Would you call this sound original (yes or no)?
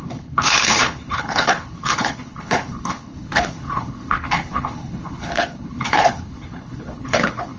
no